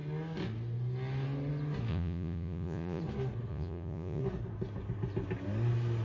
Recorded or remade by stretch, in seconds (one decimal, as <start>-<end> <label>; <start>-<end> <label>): 0.0-1.9 recorded; 1.9-3.0 remade; 3.0-3.5 recorded; 3.5-4.2 remade; 4.2-6.0 recorded